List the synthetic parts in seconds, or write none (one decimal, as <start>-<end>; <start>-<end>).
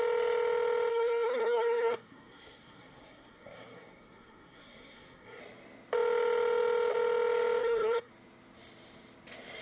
0.9-5.4; 7.6-8.1